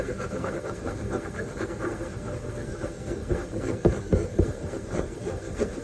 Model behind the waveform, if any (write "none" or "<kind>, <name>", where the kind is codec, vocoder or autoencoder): codec, SNAC